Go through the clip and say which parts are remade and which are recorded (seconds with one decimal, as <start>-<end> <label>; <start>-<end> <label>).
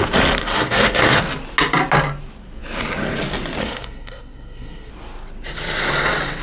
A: 0.0-0.4 recorded; 0.4-1.2 remade; 1.2-3.6 recorded; 3.6-4.9 remade; 4.9-6.4 recorded